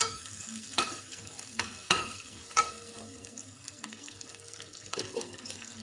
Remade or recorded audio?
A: remade